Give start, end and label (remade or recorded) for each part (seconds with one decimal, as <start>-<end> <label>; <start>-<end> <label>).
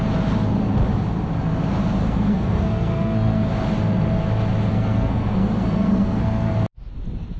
0.0-2.0 recorded; 2.0-3.5 remade; 3.5-4.7 recorded; 4.7-6.5 remade; 6.5-7.4 recorded